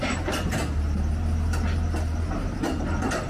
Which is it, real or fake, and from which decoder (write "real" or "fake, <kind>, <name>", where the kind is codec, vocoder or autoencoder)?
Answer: real